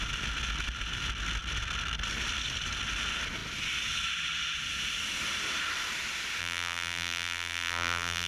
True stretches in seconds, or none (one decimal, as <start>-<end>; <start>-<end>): 0.0-6.4